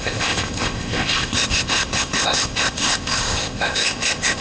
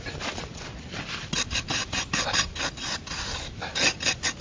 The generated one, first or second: first